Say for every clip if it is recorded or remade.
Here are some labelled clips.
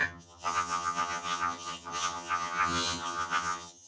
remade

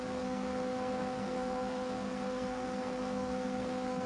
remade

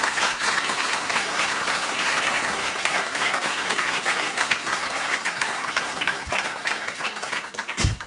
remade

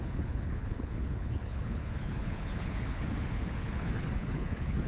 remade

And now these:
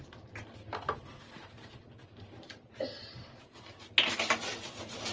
recorded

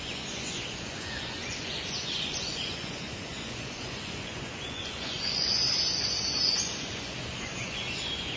remade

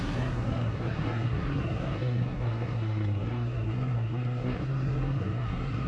remade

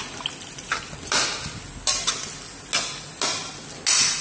recorded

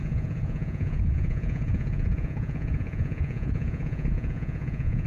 remade